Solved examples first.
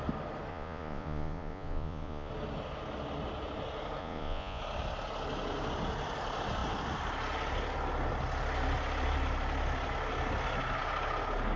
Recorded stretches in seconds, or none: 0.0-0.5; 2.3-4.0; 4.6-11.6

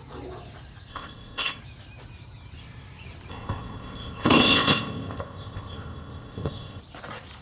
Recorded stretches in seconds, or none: 0.0-0.9; 1.6-3.3; 6.8-7.4

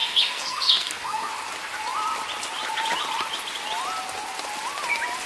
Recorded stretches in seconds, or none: 1.3-5.3

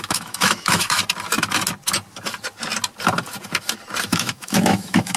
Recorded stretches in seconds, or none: 1.0-4.1

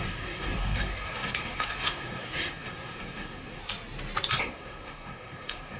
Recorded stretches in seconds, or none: 3.6-4.4

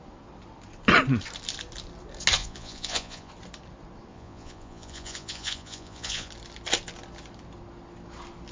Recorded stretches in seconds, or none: 0.0-2.4; 3.3-4.1; 6.3-8.5

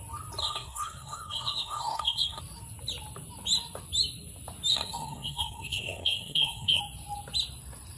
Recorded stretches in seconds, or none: 0.0-0.4; 2.4-4.7; 6.8-8.0